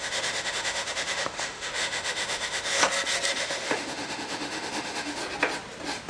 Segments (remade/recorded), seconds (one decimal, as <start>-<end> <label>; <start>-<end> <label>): 0.0-2.8 remade; 2.8-3.4 recorded; 3.4-5.2 remade; 5.2-6.1 recorded